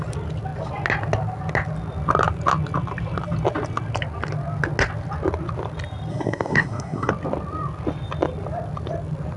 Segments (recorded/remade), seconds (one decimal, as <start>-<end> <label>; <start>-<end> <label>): 0.0-6.1 recorded; 6.1-7.1 remade; 7.1-9.4 recorded